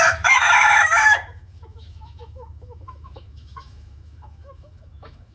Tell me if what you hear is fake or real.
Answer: fake